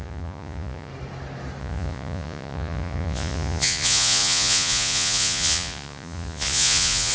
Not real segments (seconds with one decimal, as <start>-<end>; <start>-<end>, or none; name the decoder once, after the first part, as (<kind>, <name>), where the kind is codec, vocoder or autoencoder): 0.0-0.9 (vocoder, Vocos); 1.6-7.1